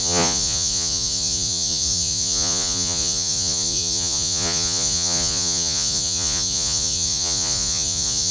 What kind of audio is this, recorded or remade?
remade